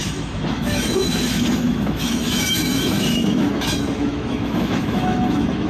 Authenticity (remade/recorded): remade